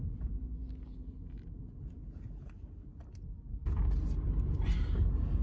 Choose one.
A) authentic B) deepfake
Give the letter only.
A